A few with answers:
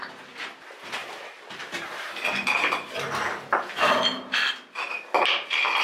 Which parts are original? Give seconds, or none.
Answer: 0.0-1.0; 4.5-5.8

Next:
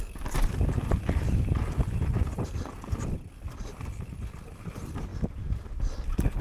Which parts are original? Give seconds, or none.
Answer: 0.0-5.1; 5.7-6.4

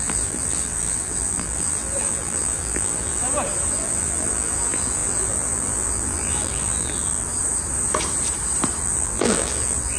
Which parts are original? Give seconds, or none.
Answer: 3.2-3.7; 7.3-8.8